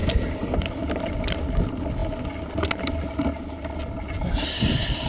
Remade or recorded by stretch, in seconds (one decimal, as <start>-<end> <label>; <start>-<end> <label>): 0.0-5.1 recorded